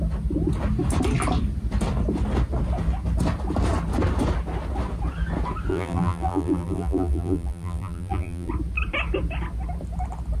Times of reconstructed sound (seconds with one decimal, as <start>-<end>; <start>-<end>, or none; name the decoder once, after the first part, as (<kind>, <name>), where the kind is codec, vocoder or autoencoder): 5.7-8.5 (vocoder, BigVGAN v2)